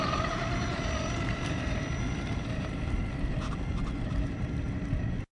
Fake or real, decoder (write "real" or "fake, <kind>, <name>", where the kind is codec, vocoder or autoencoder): real